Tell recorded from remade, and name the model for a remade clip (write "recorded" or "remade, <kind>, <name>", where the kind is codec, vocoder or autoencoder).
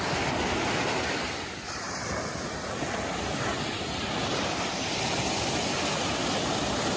remade, vocoder, BigVGAN v2